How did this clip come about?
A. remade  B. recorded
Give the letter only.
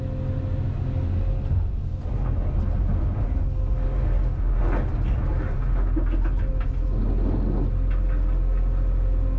B